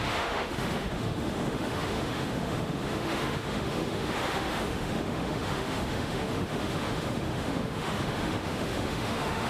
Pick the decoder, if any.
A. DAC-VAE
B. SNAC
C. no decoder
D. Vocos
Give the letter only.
A